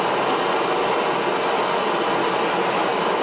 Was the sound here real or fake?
real